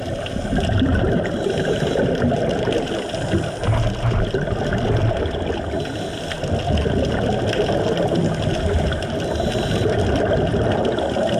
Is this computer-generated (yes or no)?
no